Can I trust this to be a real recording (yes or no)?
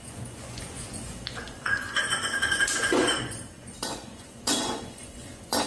no